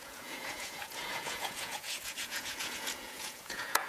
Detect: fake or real fake